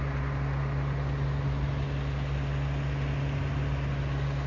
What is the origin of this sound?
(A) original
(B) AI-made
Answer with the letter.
A